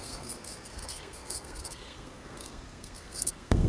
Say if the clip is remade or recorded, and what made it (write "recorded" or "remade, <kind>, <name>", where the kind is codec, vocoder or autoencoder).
remade, codec, SNAC